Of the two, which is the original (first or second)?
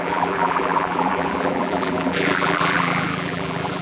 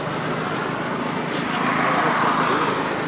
second